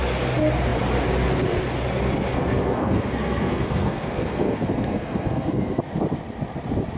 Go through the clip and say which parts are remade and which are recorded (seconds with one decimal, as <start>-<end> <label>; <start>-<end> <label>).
0.0-2.3 recorded; 2.3-5.8 remade; 5.8-7.0 recorded